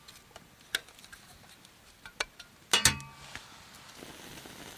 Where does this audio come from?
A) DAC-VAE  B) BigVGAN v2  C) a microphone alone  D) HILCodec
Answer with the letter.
C